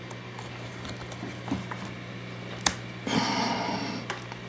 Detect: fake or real real